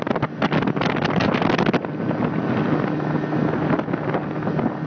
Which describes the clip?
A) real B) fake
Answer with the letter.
A